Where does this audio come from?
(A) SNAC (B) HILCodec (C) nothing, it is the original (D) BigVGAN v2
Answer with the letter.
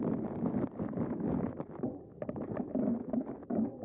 C